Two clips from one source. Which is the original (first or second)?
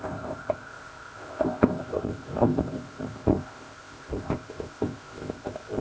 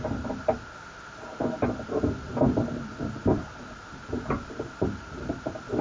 second